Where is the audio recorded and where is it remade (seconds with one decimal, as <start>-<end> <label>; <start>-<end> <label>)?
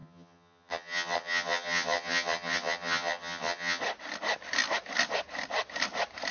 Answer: 0.0-3.8 remade; 3.8-6.3 recorded